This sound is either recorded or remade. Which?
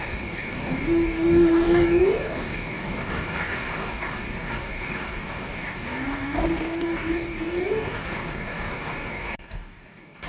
remade